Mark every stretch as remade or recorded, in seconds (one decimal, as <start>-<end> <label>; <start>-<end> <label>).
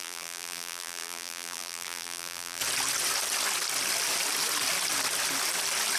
0.0-2.6 remade; 2.6-6.0 recorded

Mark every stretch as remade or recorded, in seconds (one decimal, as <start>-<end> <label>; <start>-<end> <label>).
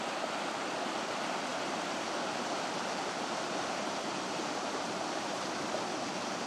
0.0-1.5 recorded; 1.5-5.4 remade; 5.4-6.5 recorded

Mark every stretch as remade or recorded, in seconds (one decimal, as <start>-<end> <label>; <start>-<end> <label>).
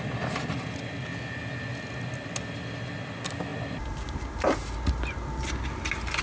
0.0-6.2 recorded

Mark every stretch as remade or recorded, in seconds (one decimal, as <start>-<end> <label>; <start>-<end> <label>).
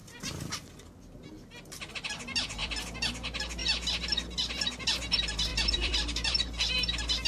0.0-2.6 recorded; 2.6-3.1 remade; 3.1-5.5 recorded; 5.5-6.8 remade; 6.8-7.3 recorded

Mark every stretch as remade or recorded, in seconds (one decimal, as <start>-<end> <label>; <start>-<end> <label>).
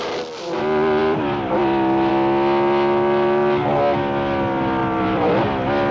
0.0-1.0 recorded; 1.0-2.1 remade; 2.1-4.8 recorded; 4.8-5.4 remade; 5.4-5.9 recorded